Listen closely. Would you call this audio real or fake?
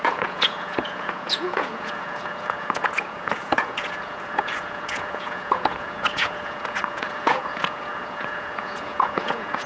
fake